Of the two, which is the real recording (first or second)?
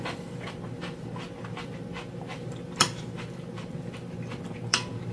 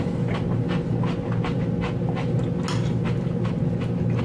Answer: second